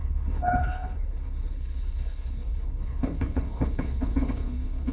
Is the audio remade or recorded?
remade